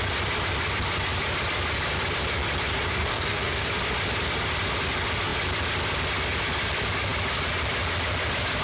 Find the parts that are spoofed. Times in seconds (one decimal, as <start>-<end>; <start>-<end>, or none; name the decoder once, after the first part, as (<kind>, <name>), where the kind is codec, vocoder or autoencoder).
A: 3.0-3.7 (codec, DAC)